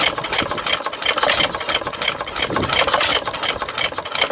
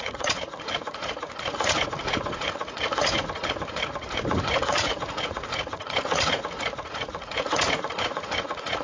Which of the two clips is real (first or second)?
first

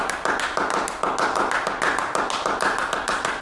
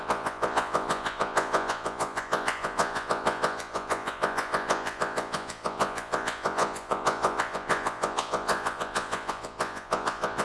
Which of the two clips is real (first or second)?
first